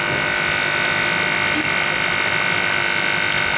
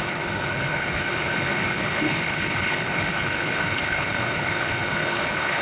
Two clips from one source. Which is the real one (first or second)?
first